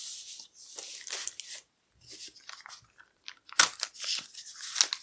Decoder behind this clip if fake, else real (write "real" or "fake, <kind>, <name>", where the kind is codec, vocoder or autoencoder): real